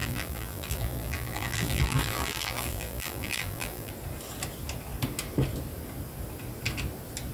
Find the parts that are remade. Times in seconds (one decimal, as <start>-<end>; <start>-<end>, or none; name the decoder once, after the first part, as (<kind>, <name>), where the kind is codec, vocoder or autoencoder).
0.0-3.9 (vocoder, BigVGAN v2)